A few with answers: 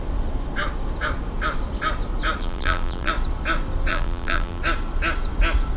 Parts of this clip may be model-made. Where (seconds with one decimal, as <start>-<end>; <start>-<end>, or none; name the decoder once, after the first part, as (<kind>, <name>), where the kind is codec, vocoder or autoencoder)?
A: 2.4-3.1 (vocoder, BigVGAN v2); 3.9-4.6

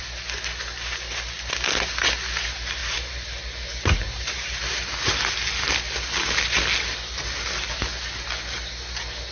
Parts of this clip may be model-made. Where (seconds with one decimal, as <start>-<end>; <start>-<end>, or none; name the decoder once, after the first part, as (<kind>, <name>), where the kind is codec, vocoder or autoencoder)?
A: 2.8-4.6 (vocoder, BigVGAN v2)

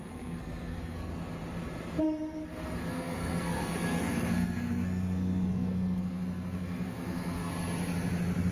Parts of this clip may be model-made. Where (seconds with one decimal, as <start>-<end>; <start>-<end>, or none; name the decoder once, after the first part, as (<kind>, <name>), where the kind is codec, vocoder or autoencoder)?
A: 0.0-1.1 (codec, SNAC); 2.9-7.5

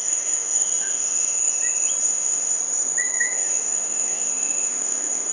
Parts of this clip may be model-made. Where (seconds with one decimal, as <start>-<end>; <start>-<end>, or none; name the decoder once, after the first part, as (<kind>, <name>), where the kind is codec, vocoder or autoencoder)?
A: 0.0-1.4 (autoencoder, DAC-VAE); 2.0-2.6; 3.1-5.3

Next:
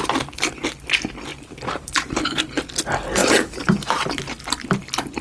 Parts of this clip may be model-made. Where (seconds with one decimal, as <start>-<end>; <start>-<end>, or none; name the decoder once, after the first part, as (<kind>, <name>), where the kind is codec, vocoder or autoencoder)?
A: 1.3-2.4 (vocoder, BigVGAN v2); 3.2-3.9